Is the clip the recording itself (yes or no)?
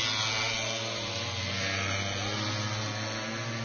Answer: yes